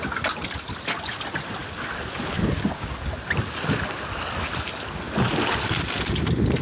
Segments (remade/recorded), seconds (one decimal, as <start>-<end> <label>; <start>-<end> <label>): 0.0-6.6 recorded